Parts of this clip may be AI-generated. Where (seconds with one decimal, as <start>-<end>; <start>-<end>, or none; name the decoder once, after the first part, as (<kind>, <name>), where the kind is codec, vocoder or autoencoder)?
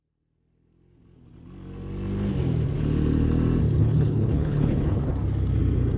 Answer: 3.8-5.0 (codec, HILCodec)